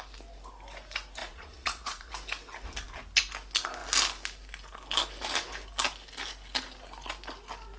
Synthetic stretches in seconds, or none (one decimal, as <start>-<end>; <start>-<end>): 1.2-2.1